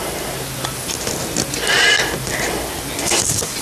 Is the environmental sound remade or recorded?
recorded